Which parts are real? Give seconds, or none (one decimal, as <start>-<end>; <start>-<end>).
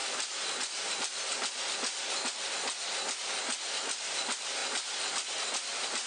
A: 0.0-3.7; 4.6-5.3